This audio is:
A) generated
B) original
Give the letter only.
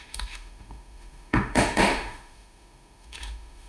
A